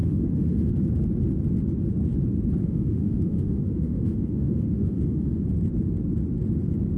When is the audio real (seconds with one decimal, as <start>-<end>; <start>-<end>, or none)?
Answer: 0.7-2.6; 5.4-7.0